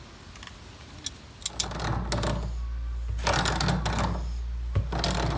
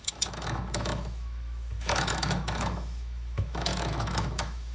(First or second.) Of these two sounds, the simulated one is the second